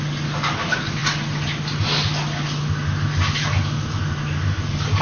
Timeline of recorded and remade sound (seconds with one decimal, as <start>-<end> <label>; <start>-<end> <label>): 0.0-5.0 recorded